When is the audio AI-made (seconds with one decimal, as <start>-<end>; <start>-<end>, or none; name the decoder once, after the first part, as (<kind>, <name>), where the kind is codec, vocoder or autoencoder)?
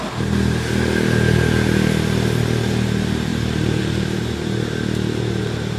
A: 3.3-3.8 (vocoder, BigVGAN v2)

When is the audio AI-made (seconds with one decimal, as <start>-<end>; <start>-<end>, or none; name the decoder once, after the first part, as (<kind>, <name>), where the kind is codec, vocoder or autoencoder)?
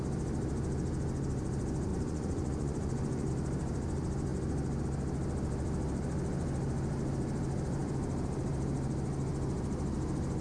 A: 1.9-3.3 (vocoder, Vocos)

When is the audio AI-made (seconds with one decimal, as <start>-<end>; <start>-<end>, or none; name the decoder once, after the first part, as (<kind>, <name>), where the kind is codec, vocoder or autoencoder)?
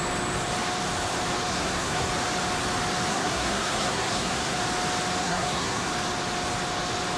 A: 1.5-2.1 (codec, SNAC); 3.1-4.6; 5.2-5.9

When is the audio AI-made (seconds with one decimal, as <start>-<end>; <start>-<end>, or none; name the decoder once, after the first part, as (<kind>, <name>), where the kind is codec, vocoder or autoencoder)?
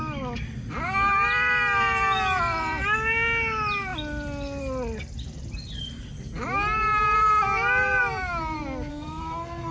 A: 8.9-9.7 (codec, SNAC)